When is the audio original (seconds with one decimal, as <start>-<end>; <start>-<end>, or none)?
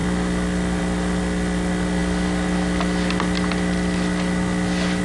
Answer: 0.0-5.0